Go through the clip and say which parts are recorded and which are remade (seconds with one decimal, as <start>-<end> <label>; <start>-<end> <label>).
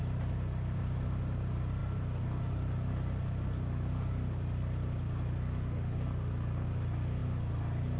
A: 0.0-8.0 recorded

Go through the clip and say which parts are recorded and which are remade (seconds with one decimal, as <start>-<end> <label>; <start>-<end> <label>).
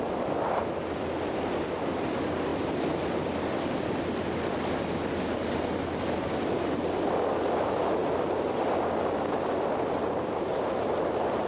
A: 0.0-11.5 recorded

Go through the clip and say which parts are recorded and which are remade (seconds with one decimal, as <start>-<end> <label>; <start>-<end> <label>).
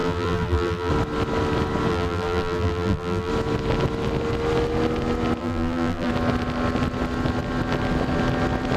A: 0.0-0.9 remade; 0.9-1.9 recorded; 1.9-3.3 remade; 3.3-5.4 recorded; 5.4-6.1 remade; 6.1-8.8 recorded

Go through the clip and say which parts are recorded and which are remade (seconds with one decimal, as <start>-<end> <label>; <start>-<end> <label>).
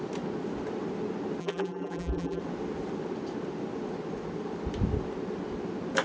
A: 0.0-1.4 recorded; 1.4-2.4 remade; 2.4-6.0 recorded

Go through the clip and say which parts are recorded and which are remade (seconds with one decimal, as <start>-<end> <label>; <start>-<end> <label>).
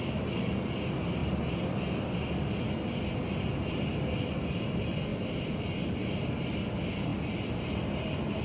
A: 0.0-1.2 recorded; 1.2-1.7 remade; 1.7-7.1 recorded; 7.1-8.4 remade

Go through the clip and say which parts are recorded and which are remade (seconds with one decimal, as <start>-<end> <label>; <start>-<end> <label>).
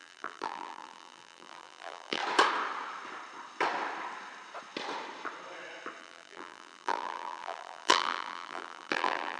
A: 0.0-2.2 remade; 2.2-6.0 recorded; 6.0-9.4 remade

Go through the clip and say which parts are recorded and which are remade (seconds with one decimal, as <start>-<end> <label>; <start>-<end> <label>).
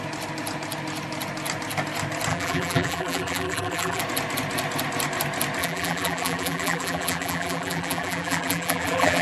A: 0.0-2.3 recorded; 2.3-4.0 remade; 4.0-5.6 recorded; 5.6-9.2 remade